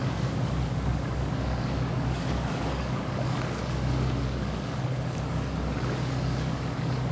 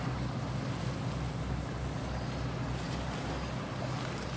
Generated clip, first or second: first